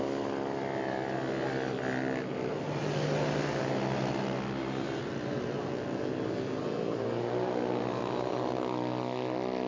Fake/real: real